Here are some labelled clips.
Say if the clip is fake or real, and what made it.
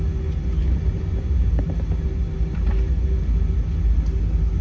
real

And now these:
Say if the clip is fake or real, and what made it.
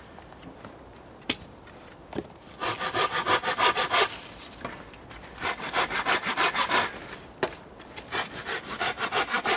fake, vocoder, BigVGAN v2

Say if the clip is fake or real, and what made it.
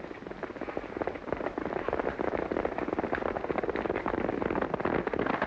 real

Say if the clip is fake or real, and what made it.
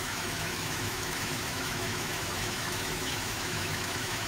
fake, autoencoder, DAC-VAE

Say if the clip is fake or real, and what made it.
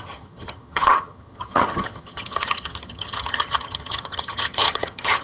fake, vocoder, HiFi-GAN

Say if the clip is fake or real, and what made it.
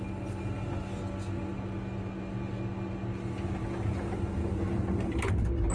real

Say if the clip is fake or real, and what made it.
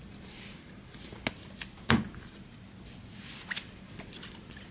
real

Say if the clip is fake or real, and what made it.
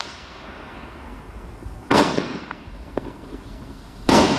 fake, codec, SNAC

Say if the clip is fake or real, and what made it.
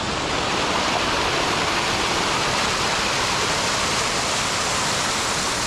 real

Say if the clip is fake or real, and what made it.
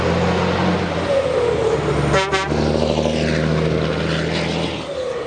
real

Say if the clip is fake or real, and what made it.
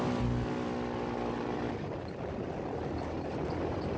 real